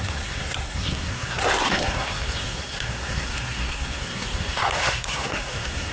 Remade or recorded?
remade